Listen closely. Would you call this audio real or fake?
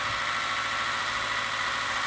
real